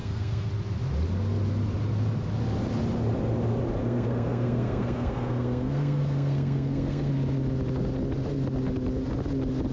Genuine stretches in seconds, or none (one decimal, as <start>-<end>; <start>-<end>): 0.5-3.8; 7.1-9.7